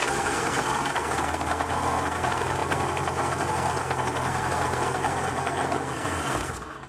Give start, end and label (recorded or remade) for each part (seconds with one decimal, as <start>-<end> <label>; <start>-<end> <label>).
0.0-6.9 remade